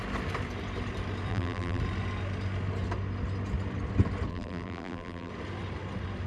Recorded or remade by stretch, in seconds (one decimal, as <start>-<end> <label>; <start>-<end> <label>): 0.0-1.3 recorded; 1.3-1.8 remade; 1.8-4.3 recorded; 4.3-5.3 remade; 5.3-6.3 recorded